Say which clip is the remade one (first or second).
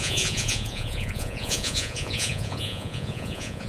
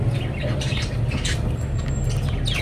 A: first